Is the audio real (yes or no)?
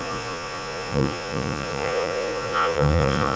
no